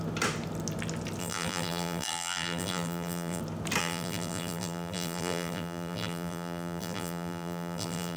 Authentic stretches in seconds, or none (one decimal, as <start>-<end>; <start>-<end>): 0.0-1.2; 3.4-3.8